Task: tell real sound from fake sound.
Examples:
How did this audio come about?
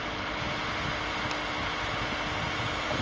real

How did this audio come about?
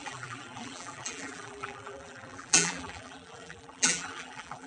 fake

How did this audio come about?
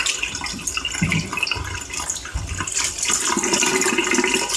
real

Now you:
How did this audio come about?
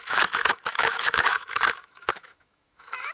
fake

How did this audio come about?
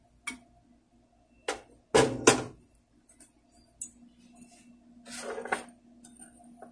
real